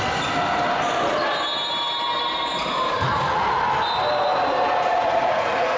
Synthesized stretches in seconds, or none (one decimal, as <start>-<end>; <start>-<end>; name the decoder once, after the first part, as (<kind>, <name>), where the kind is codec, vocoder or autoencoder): 4.3-5.8 (vocoder, Vocos)

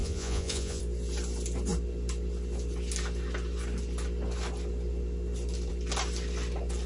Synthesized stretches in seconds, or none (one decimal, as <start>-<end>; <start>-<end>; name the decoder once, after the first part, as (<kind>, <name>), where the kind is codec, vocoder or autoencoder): 0.0-0.8 (vocoder, Vocos)

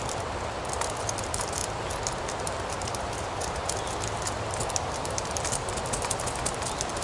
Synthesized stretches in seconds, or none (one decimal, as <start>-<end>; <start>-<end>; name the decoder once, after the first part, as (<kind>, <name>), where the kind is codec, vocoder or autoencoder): none

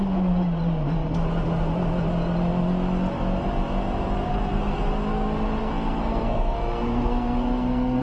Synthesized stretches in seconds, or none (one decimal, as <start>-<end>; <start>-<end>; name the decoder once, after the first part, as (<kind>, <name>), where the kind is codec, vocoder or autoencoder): 4.3-4.8 (codec, SNAC); 5.6-8.0

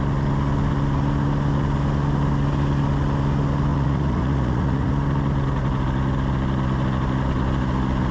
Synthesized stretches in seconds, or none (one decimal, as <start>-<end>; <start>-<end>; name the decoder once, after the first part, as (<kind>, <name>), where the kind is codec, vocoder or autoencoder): 3.7-4.9 (vocoder, Vocos)

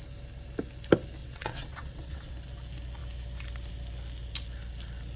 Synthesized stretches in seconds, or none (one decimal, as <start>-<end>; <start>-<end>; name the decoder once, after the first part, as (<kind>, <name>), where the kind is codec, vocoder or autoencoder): 1.2-2.3 (vocoder, WaveNeXt)

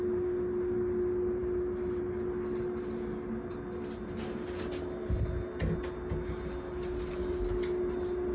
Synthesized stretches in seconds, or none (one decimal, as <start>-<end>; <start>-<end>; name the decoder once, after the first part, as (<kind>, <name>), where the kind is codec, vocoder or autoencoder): none

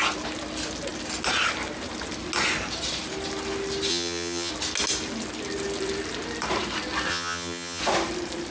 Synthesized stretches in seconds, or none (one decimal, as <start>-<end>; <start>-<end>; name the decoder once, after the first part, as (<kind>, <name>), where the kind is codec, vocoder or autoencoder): 3.9-4.5 (vocoder, HiFi-GAN); 7.1-7.8